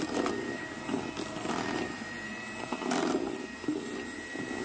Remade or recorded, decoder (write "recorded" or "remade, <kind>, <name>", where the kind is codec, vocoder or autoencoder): recorded